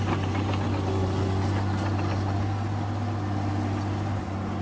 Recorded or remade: recorded